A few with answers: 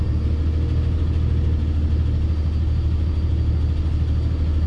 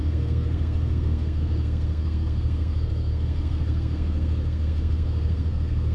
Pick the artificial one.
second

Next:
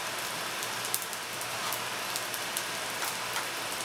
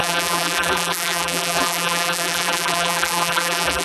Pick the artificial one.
second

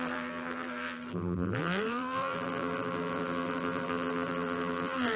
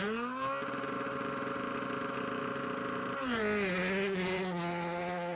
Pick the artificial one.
first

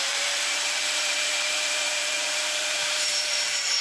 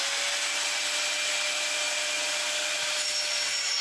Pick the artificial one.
first